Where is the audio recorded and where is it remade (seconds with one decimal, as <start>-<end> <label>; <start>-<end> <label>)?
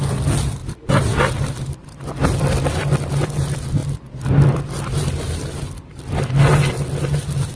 0.0-3.8 recorded; 3.8-6.4 remade; 6.4-7.6 recorded